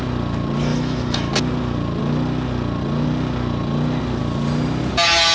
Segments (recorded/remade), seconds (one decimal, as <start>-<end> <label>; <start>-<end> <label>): 0.0-0.7 recorded; 0.7-1.3 remade; 1.3-5.3 recorded